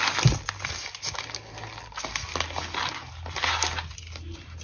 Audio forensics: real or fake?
real